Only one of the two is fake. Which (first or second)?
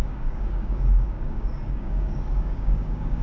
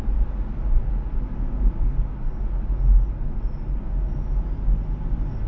first